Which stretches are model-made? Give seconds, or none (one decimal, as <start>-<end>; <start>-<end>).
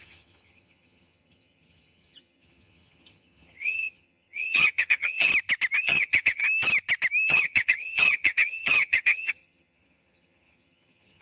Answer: 0.0-5.3; 5.8-6.4; 7.3-11.2